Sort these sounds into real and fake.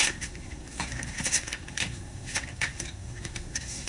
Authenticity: fake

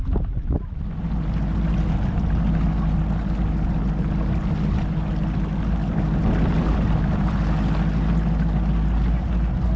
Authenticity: real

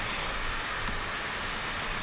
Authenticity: real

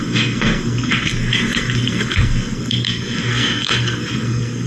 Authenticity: fake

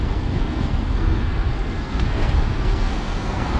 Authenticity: fake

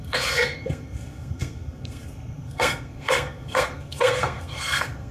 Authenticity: fake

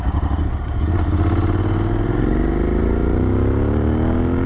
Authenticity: real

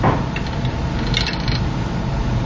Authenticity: real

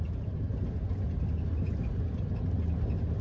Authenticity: real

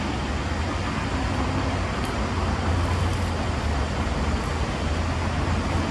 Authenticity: real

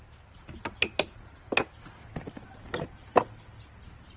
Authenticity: real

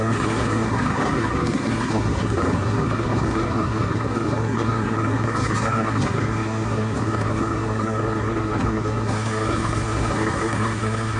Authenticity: fake